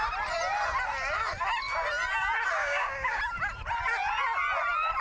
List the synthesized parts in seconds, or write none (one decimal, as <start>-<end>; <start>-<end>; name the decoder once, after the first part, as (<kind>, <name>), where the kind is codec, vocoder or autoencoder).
2.6-3.2 (codec, DAC)

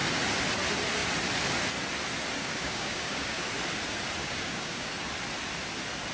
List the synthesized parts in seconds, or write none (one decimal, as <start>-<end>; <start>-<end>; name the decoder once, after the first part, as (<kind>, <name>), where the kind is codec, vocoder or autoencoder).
2.4-3.4 (codec, DAC); 4.2-4.9

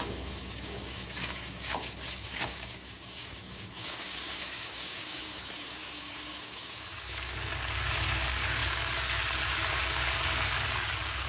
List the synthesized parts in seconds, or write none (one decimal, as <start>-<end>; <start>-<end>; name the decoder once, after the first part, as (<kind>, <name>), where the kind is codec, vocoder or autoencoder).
0.0-11.3 (codec, DAC)

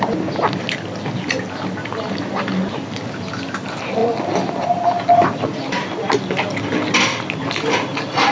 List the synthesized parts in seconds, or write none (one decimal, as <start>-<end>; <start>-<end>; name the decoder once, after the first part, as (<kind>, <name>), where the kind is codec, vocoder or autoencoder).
none